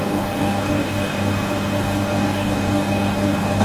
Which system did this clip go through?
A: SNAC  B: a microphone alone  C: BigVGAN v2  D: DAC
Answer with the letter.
D